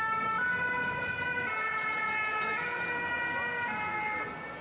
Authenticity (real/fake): real